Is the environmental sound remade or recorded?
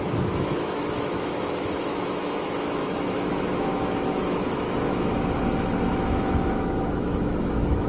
remade